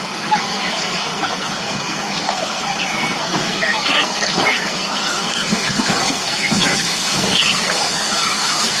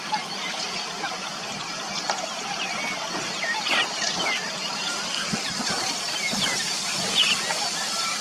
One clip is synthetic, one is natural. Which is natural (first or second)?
second